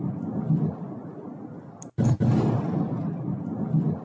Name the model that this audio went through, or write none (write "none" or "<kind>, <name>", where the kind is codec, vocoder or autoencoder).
none